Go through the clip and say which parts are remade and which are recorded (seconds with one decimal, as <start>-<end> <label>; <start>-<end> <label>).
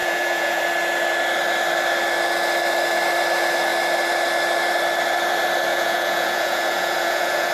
0.0-0.6 remade; 0.6-5.7 recorded; 5.7-7.5 remade